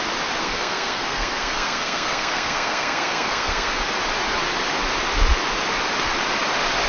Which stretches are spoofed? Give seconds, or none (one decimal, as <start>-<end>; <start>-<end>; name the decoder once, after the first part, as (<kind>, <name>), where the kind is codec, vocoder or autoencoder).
0.4-3.8 (codec, SNAC)